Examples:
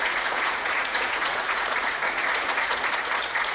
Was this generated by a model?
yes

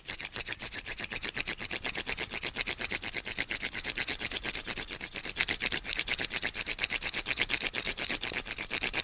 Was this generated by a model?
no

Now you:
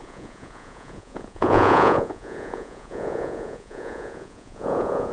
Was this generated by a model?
yes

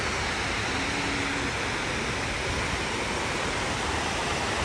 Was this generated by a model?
no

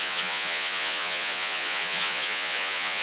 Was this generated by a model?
yes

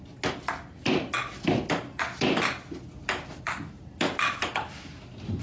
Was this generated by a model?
no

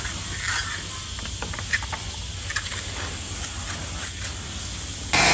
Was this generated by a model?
no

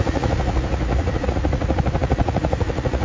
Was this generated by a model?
yes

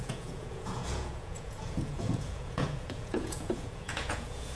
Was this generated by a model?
yes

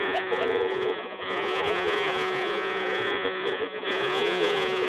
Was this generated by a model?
yes